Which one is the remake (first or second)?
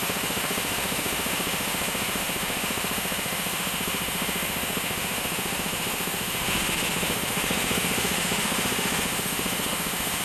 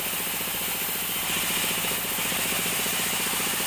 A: first